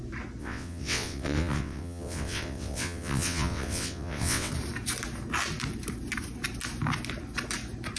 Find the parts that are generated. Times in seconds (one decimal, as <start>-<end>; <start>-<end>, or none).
0.4-4.5